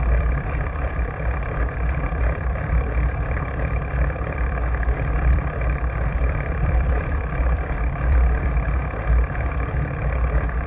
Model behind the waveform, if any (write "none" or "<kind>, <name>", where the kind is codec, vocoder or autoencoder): vocoder, BigVGAN v2